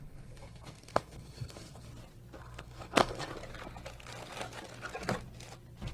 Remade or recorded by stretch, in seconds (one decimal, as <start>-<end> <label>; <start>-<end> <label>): 0.0-1.9 remade; 1.9-2.4 recorded; 2.4-3.3 remade; 3.3-5.9 recorded